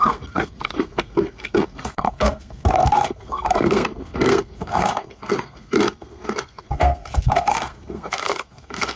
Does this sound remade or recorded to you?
remade